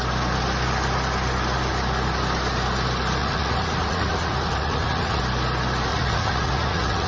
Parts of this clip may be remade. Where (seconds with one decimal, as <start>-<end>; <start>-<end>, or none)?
3.2-5.2; 5.9-7.1